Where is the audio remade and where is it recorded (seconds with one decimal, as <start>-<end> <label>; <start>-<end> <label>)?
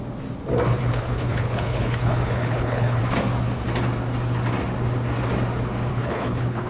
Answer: 0.0-0.8 recorded; 0.8-3.0 remade; 3.0-5.9 recorded; 5.9-6.7 remade